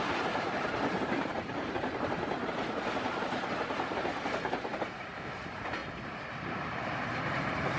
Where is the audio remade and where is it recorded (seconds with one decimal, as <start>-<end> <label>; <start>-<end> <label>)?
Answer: 0.0-5.8 remade; 5.8-6.3 recorded; 6.3-7.8 remade